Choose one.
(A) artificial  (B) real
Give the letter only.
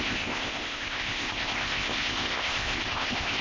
A